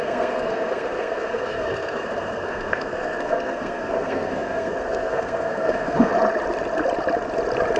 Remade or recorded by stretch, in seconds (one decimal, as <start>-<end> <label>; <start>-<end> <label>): 0.0-6.1 remade; 6.1-7.8 recorded